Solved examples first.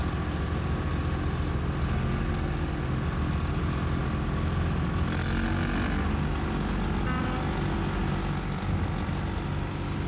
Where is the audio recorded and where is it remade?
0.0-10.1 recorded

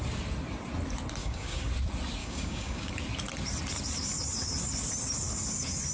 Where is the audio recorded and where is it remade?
0.0-1.2 recorded; 1.2-1.7 remade; 1.7-2.2 recorded; 2.2-2.9 remade; 2.9-5.9 recorded

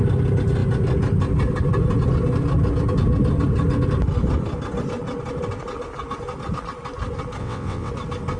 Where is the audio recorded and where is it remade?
0.0-7.4 recorded; 7.4-7.9 remade; 7.9-8.4 recorded

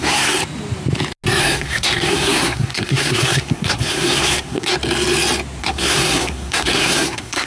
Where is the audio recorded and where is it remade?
0.0-0.4 remade; 0.4-1.4 recorded; 1.4-4.7 remade; 4.7-5.6 recorded; 5.6-7.5 remade